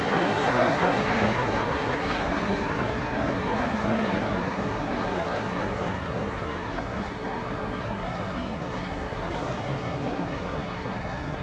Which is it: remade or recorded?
remade